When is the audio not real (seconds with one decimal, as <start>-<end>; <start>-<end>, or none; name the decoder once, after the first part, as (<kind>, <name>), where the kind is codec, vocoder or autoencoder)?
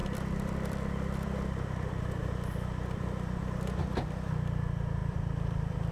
0.0-5.9 (vocoder, BigVGAN v2)